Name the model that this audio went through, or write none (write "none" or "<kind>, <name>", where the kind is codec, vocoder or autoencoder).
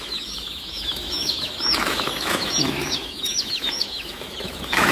autoencoder, DAC-VAE